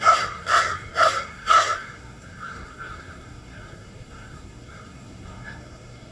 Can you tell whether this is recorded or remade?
remade